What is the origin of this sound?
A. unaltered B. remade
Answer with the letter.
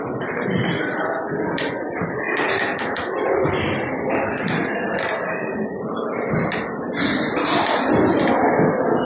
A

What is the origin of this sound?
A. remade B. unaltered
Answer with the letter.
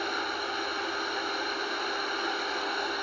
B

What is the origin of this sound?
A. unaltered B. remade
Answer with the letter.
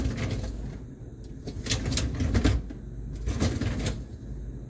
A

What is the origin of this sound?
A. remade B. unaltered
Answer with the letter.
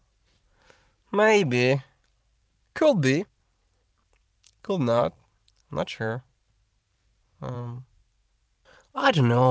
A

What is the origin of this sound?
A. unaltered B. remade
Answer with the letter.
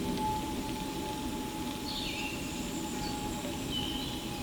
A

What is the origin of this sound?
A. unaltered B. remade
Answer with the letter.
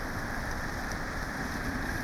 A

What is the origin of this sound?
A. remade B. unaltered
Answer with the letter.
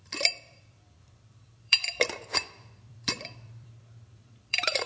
A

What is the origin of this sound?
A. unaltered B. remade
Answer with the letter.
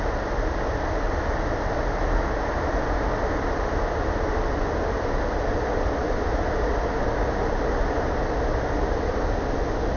A